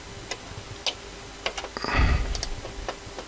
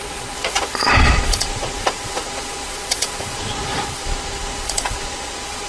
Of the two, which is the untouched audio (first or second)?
first